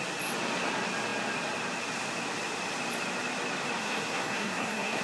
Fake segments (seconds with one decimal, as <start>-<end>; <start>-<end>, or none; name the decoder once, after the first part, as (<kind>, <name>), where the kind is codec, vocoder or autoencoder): 3.8-5.0 (codec, SNAC)